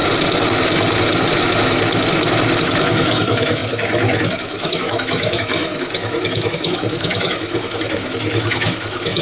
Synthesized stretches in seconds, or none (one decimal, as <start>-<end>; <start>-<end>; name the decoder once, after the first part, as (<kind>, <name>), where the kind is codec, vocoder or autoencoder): 2.6-9.2 (autoencoder, DAC-VAE)